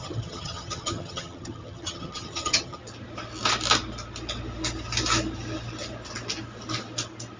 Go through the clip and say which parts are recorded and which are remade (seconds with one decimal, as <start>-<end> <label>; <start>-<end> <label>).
0.0-2.8 remade; 2.8-7.4 recorded